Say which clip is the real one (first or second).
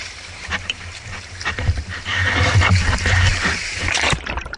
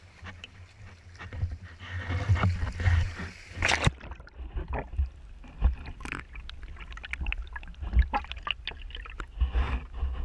second